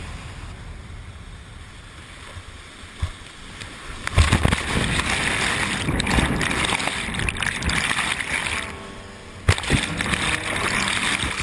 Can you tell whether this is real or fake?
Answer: real